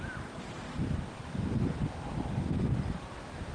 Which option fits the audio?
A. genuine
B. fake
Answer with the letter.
A